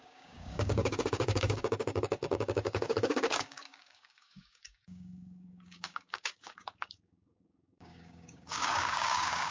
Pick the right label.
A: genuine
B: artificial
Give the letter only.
B